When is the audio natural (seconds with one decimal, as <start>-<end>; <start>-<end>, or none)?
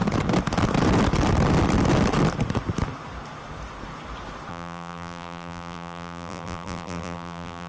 0.0-4.5